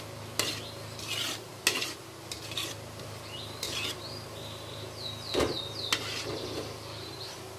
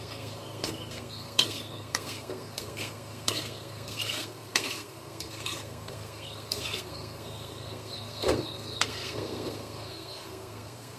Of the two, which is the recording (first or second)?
first